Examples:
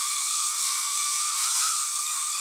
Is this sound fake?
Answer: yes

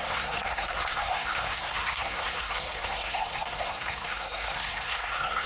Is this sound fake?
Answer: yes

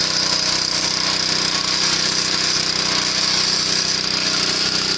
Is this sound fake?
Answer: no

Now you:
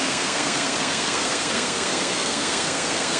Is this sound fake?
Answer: yes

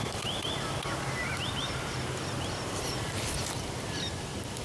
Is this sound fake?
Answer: no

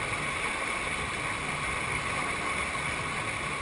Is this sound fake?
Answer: no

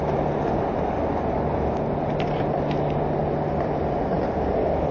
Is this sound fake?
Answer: no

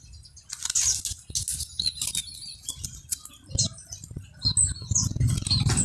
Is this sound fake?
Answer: no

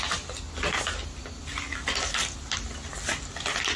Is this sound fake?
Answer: no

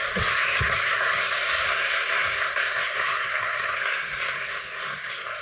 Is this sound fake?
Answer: yes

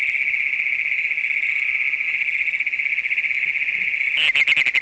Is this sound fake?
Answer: no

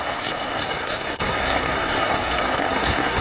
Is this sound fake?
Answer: yes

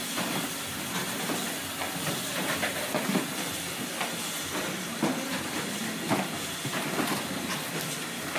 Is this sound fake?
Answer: no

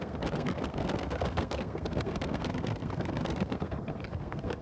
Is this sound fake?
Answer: yes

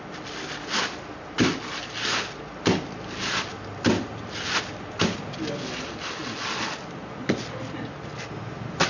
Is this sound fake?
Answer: no